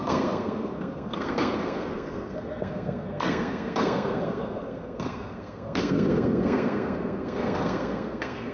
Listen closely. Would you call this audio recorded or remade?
remade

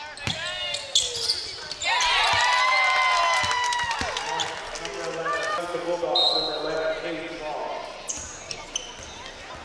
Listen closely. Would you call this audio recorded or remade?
recorded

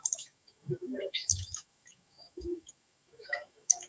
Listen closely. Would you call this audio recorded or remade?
remade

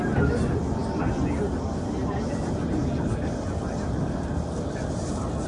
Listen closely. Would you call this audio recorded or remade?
recorded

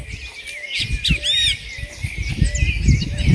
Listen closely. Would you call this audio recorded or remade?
recorded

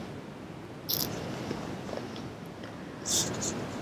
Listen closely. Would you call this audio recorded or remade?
recorded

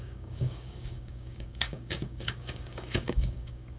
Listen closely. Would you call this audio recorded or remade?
remade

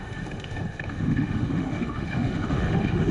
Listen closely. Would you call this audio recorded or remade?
remade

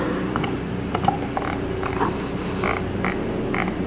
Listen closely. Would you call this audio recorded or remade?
recorded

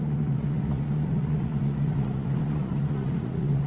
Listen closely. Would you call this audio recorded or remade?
remade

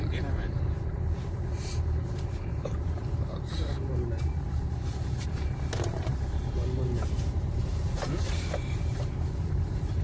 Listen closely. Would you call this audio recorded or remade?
remade